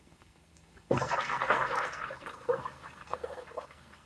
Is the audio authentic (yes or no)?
no